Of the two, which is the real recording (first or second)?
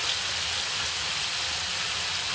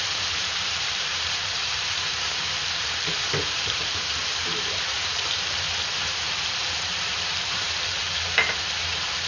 first